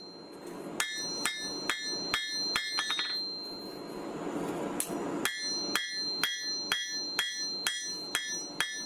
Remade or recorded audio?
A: recorded